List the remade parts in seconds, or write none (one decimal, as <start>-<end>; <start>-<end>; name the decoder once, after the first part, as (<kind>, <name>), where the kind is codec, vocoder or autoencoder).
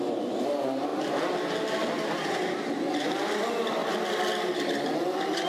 none